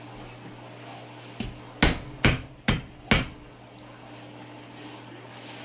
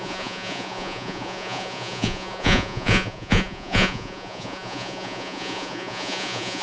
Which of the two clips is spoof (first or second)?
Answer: second